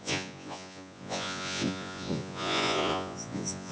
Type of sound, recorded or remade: remade